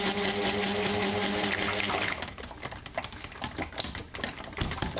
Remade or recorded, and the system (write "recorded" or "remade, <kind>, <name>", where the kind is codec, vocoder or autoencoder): recorded